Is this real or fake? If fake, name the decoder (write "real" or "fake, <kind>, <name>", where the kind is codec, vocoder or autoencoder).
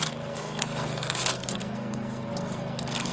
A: fake, codec, SNAC